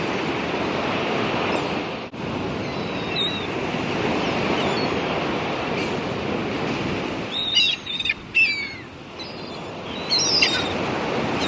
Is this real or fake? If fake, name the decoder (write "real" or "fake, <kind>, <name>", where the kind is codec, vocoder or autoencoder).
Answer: real